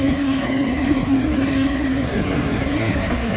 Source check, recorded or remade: remade